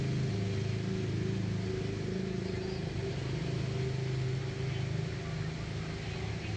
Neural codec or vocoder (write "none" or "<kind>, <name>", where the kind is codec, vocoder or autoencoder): none